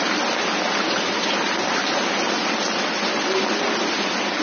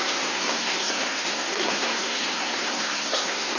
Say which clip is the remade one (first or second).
second